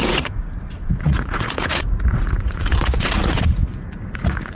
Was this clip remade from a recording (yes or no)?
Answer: yes